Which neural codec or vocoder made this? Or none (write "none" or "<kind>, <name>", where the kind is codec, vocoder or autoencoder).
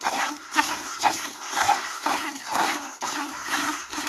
codec, SNAC